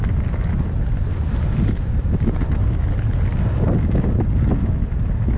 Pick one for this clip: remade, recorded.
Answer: recorded